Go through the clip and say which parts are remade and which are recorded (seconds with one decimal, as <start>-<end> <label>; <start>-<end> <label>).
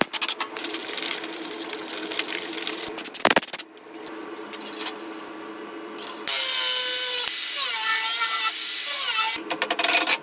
0.0-10.2 recorded